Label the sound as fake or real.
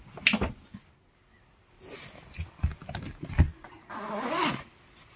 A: real